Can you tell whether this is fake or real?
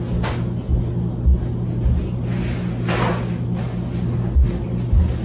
real